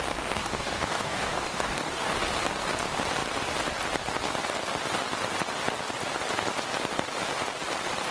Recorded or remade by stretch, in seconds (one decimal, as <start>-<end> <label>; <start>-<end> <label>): 0.0-0.4 recorded; 0.4-2.2 remade; 2.2-8.1 recorded